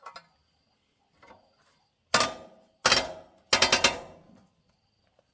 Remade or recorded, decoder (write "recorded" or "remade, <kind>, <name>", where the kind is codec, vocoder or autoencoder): recorded